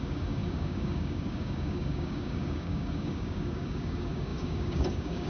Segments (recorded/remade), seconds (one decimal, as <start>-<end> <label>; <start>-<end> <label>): 0.0-5.3 remade